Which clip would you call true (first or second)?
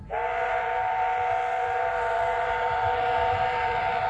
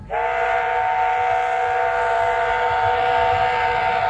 second